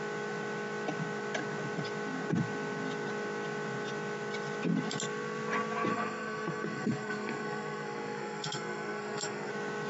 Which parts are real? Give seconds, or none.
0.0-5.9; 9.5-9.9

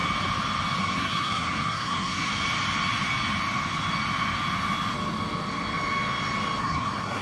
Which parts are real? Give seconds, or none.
0.0-0.8; 2.3-6.6

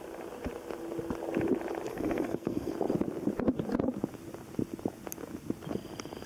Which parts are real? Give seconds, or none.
0.0-1.9; 2.7-6.3

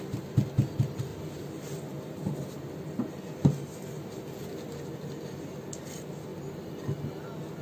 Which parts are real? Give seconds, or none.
0.0-7.6

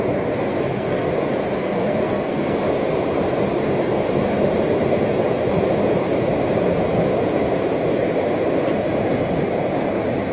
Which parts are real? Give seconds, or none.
0.0-0.5; 1.1-1.6; 2.6-10.3

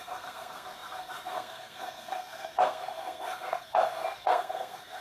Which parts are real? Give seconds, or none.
none